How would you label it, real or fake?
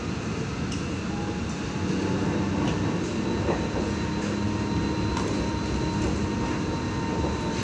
real